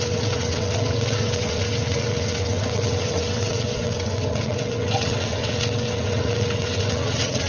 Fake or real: fake